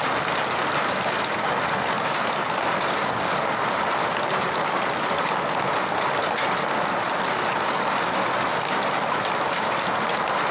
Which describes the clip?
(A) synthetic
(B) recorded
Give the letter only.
B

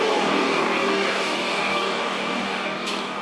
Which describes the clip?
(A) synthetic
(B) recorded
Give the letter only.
A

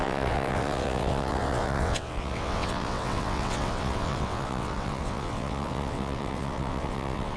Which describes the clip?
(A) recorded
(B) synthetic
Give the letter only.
B